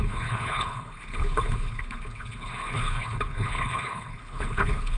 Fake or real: fake